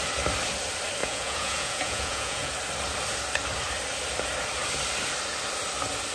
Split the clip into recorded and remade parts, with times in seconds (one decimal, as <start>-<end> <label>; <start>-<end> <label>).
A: 0.0-1.0 recorded; 1.0-2.5 remade; 2.5-6.1 recorded